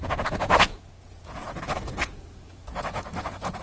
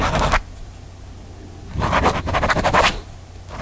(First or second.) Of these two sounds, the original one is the second